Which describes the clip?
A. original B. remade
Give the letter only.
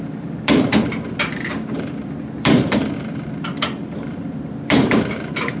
B